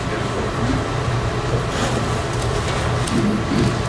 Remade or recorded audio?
recorded